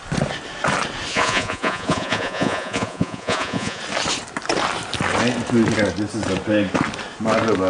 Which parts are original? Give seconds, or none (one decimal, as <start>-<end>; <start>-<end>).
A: 0.0-1.1; 3.8-7.7